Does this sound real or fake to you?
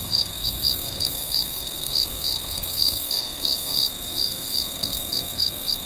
fake